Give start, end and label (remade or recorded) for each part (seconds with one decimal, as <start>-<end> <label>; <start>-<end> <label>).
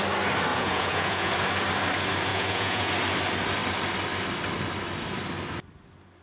0.0-0.5 recorded; 0.5-1.3 remade; 1.3-2.3 recorded; 2.3-2.9 remade; 2.9-6.2 recorded